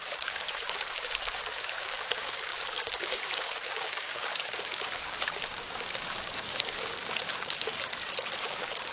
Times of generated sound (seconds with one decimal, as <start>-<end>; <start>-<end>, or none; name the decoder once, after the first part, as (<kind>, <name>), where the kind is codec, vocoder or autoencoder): 0.0-7.9 (codec, DAC); 8.4-8.9